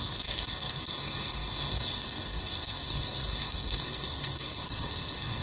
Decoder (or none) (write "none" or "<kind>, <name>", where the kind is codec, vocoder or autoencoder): codec, SNAC